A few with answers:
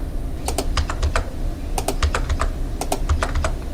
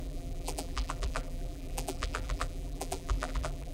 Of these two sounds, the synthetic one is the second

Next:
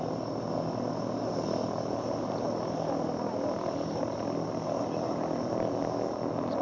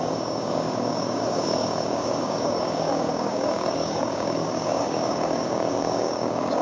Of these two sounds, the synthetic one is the second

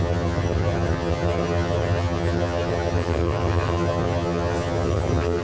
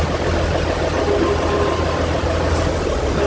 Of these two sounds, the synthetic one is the first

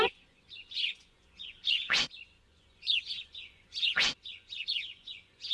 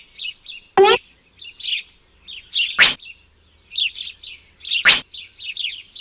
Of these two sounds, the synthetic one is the first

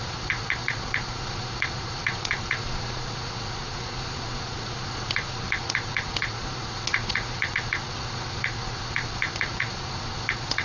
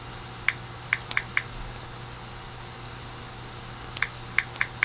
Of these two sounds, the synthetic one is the first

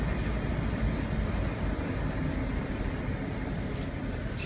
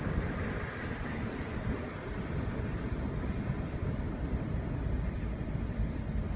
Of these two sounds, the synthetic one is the second